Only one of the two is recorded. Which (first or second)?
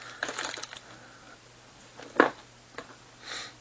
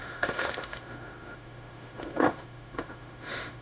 first